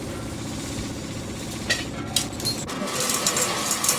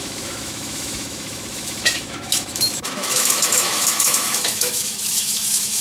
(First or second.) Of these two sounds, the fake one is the second